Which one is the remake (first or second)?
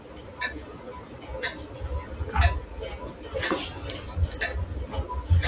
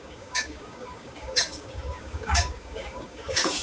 second